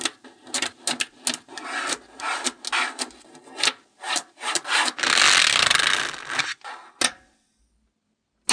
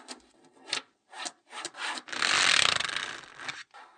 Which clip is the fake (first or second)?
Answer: second